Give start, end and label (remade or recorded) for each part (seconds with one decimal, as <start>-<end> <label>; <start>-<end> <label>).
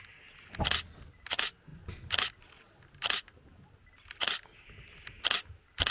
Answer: 0.0-5.9 recorded